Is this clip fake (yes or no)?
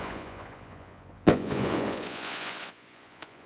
yes